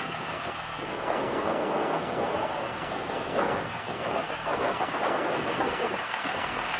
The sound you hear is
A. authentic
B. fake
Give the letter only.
B